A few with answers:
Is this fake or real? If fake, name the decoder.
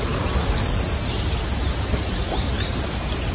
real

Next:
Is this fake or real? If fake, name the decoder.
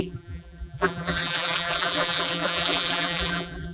fake, vocoder, BigVGAN v2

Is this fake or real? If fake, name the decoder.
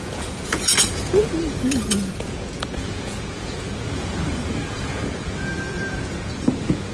fake, vocoder, Vocos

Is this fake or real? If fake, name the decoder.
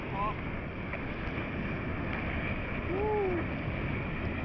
real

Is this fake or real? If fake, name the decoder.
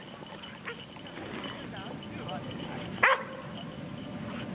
real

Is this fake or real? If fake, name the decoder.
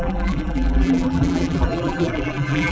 fake, vocoder, BigVGAN v2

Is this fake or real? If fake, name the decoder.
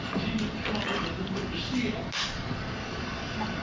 real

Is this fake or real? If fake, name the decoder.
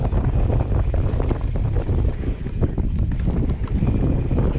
real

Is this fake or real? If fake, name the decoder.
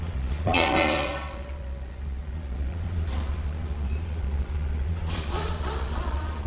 fake, vocoder, Vocos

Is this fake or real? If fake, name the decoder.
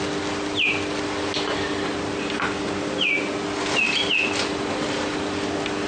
real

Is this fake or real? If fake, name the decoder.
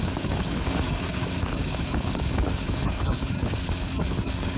fake, codec, DAC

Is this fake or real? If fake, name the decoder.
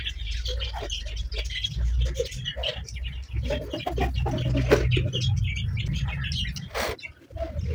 real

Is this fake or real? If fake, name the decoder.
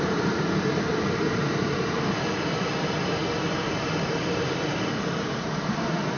fake, vocoder, BigVGAN v2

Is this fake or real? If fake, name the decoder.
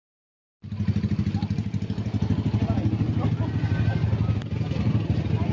real